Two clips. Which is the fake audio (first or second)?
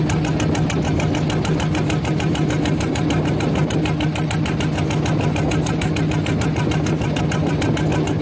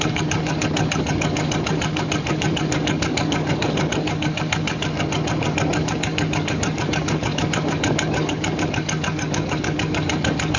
second